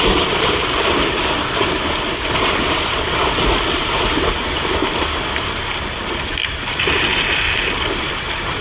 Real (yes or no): yes